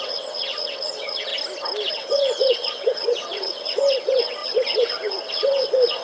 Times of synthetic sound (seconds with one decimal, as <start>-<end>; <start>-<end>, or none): 0.0-1.3; 1.9-6.0